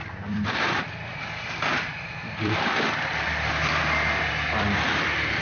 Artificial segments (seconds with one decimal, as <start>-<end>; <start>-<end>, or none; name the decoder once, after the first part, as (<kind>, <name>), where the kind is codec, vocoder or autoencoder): 0.0-3.8 (vocoder, BigVGAN v2); 4.3-5.4